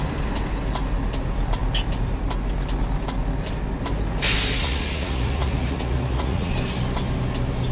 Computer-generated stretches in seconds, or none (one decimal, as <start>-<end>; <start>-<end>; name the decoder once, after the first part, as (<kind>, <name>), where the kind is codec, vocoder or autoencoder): 4.6-6.5 (vocoder, Vocos)

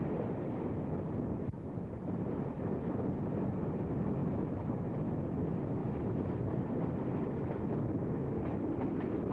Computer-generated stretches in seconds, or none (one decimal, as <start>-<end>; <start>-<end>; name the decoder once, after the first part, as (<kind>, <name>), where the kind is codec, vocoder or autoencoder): 5.8-6.6 (autoencoder, DAC-VAE)